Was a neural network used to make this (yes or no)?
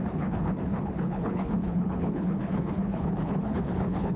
yes